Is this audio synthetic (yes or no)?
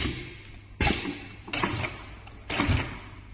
no